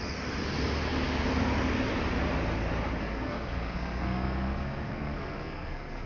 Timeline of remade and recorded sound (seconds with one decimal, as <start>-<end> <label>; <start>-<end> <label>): 0.0-3.0 recorded; 3.0-6.1 remade